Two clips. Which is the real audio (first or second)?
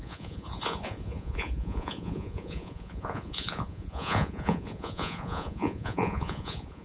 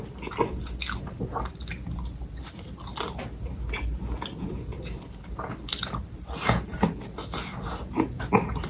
second